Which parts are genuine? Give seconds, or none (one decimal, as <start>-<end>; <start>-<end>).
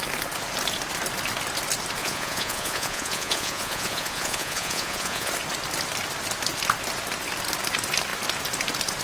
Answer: 0.0-2.0; 5.3-9.0